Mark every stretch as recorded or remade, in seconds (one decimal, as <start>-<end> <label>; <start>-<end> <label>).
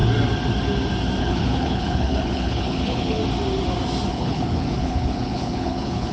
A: 0.0-1.2 recorded; 1.2-3.2 remade; 3.2-4.1 recorded; 4.1-6.1 remade